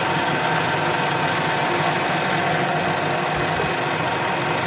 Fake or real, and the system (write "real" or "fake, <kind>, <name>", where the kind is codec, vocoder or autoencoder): real